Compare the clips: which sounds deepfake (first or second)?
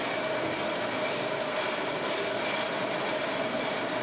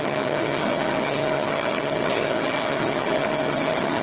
second